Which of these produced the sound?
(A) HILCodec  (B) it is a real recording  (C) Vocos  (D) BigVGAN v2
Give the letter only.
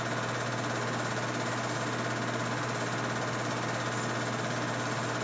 B